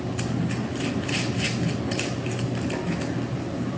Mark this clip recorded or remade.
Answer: recorded